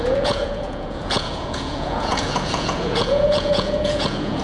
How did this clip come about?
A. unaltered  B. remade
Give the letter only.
B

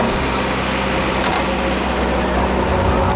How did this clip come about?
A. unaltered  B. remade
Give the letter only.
A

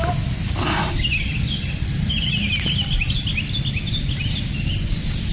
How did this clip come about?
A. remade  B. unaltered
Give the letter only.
B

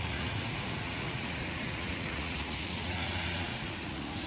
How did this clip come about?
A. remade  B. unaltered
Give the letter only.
A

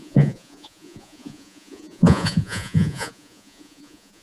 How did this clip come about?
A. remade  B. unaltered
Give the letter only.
A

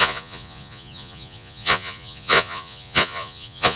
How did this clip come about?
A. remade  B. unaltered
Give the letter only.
A